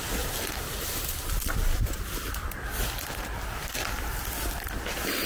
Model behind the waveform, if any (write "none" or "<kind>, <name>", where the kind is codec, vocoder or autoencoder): vocoder, BigVGAN v2